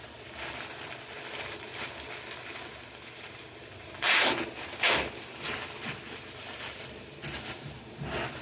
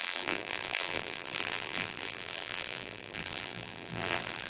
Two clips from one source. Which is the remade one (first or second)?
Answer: second